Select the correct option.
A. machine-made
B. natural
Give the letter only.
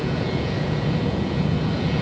A